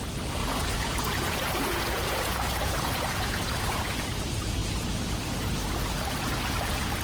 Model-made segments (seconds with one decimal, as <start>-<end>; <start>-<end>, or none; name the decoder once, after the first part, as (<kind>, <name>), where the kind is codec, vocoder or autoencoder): 0.4-3.8 (vocoder, Vocos)